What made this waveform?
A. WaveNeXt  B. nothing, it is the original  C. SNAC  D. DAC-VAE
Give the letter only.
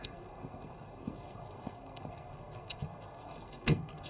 C